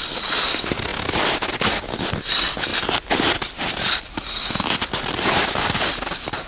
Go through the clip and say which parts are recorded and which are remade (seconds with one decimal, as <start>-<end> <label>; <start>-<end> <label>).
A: 0.0-6.5 recorded